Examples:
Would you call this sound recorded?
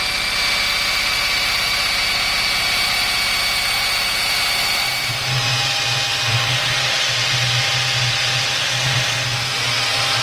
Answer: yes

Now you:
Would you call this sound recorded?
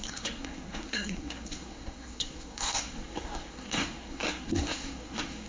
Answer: no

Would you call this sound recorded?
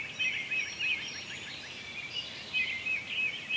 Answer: yes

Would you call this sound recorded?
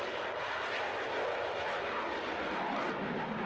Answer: yes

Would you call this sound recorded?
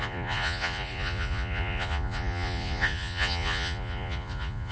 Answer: no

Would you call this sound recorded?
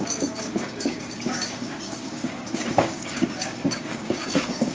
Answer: no